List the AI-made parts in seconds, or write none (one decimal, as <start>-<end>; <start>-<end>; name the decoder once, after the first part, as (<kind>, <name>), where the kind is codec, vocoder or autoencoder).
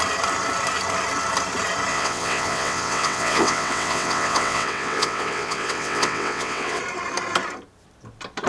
1.9-6.8 (vocoder, WaveNeXt)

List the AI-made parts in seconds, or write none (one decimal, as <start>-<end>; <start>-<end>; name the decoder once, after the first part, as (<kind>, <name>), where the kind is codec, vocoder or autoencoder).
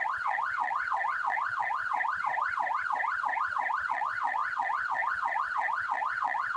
0.0-1.9 (vocoder, WaveNeXt); 3.9-6.6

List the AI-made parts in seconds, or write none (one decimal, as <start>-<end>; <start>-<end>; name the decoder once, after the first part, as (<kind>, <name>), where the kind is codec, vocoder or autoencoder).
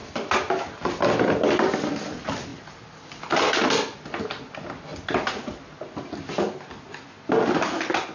none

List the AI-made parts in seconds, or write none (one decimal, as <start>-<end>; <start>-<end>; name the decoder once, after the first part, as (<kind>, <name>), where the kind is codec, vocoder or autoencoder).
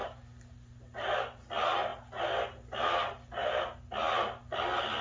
none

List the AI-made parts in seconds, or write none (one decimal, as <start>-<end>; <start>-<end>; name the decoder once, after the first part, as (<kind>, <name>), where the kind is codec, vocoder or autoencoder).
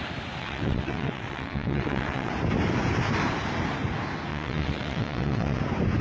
0.4-2.3 (vocoder, WaveNeXt); 4.3-5.6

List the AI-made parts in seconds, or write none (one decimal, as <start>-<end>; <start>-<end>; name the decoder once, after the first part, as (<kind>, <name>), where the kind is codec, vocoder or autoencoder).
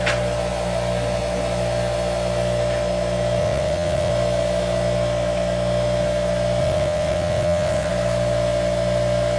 3.4-4.1 (vocoder, WaveNeXt); 6.6-7.9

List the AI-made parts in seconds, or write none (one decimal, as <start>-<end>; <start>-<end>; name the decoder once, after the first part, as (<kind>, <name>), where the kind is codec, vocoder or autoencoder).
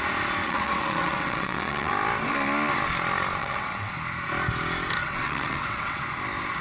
0.4-1.9 (vocoder, WaveNeXt); 3.4-3.9; 5.0-6.0